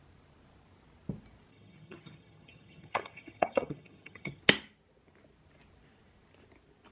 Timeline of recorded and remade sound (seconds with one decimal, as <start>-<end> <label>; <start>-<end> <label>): 0.0-1.5 recorded; 1.5-4.4 remade; 4.4-6.9 recorded